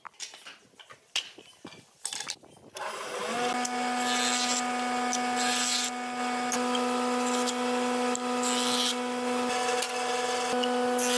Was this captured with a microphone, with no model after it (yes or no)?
yes